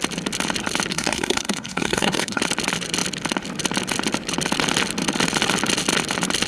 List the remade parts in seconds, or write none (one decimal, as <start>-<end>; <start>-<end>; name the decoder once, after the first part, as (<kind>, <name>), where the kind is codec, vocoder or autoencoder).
0.9-2.4 (codec, SNAC)